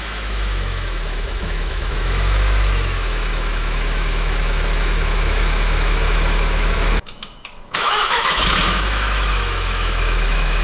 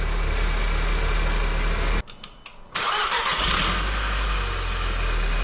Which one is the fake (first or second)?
first